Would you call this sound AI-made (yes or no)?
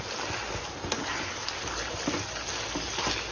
no